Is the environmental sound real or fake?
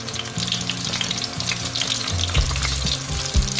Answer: real